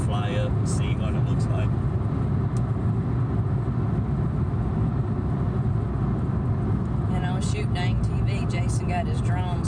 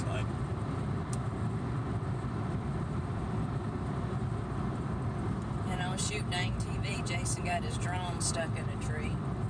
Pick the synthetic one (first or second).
second